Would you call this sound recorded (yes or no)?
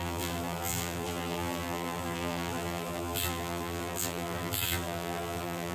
no